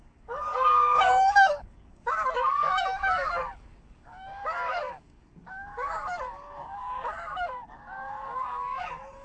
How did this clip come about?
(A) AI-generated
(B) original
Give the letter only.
A